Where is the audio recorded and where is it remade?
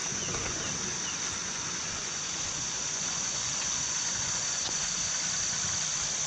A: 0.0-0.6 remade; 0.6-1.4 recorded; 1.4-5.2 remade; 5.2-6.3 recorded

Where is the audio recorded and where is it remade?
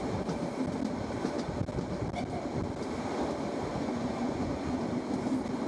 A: 0.0-3.7 recorded; 3.7-4.8 remade; 4.8-5.7 recorded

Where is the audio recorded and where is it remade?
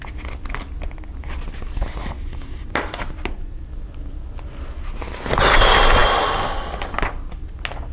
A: 0.0-7.9 recorded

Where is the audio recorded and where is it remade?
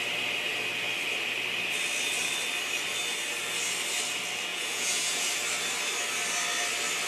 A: 0.0-4.5 recorded; 4.5-5.3 remade; 5.3-7.1 recorded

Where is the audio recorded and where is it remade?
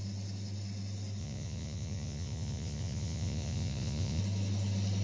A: 0.0-1.2 recorded; 1.2-4.2 remade; 4.2-5.0 recorded